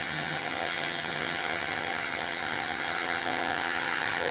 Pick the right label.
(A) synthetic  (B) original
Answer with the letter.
A